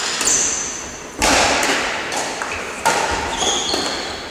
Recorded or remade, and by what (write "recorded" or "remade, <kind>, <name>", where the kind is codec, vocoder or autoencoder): recorded